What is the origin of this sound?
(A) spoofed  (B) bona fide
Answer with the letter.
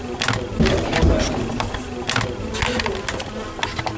B